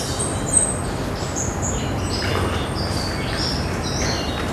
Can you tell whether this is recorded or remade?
recorded